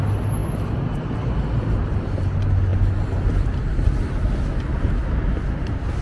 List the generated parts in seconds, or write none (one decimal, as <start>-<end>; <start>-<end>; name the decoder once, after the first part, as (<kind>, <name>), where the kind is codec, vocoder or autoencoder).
none